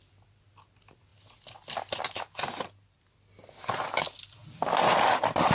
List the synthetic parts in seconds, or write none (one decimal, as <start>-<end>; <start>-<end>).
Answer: none

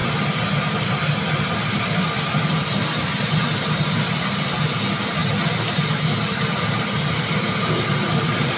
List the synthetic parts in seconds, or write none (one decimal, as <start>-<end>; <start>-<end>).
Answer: none

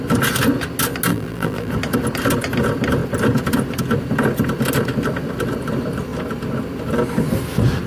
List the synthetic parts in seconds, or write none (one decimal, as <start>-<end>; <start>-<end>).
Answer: 1.1-1.7

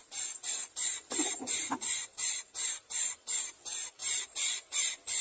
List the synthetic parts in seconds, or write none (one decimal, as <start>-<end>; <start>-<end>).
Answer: 0.7-4.0

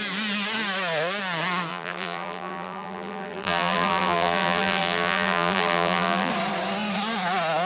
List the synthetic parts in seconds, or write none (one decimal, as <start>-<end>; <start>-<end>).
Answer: 1.7-6.3

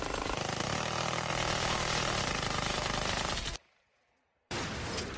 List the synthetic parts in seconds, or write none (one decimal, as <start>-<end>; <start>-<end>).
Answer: 0.0-1.3; 4.4-5.2

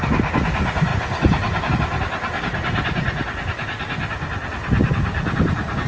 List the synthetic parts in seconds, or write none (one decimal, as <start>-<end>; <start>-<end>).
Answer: 0.9-1.7